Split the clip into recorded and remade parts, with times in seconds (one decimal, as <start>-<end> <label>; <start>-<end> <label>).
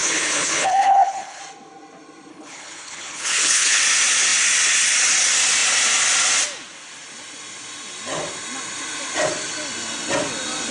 0.0-1.4 remade; 1.4-2.3 recorded; 2.3-3.8 remade; 3.8-10.7 recorded